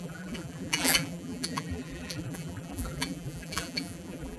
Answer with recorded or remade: remade